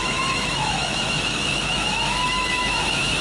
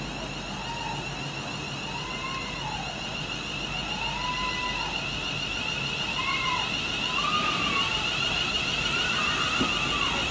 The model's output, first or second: first